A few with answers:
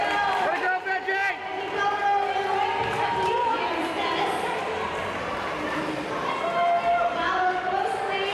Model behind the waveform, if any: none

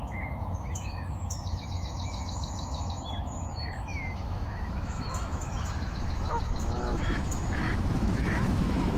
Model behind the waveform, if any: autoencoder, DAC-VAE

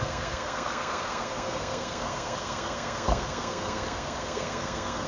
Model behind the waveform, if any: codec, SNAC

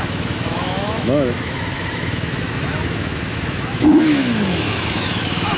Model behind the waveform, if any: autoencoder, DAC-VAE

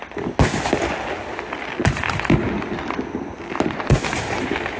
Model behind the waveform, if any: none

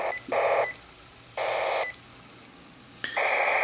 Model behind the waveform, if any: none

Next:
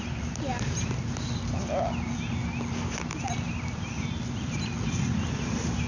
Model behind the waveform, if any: none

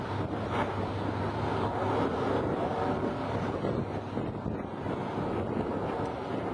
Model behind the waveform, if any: none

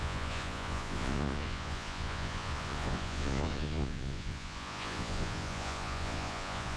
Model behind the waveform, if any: vocoder, Vocos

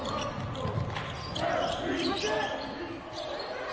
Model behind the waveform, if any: none